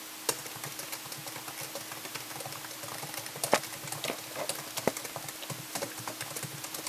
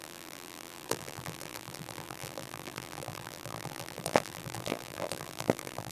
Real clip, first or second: first